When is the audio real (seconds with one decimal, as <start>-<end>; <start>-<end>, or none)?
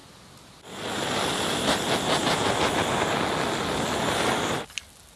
0.0-5.2